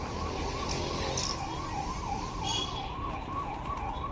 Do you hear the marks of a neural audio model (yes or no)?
no